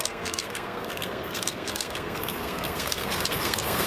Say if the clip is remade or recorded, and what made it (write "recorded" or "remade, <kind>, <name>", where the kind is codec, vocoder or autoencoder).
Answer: remade, codec, SNAC